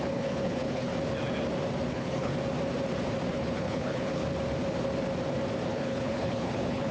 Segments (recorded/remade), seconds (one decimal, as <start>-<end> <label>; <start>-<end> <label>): 0.0-0.9 remade; 0.9-1.9 recorded; 1.9-2.3 remade; 2.3-3.3 recorded; 3.3-4.2 remade; 4.2-5.7 recorded; 5.7-6.9 remade